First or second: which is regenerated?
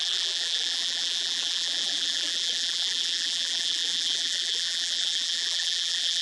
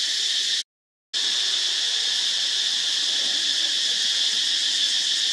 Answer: first